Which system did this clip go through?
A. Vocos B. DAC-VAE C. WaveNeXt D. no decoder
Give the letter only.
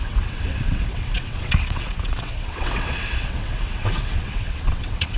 C